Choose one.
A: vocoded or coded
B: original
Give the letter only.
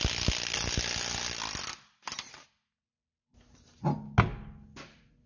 B